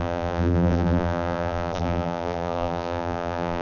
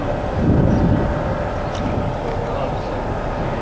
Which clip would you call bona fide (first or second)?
second